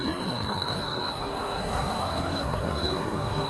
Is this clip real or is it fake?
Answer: fake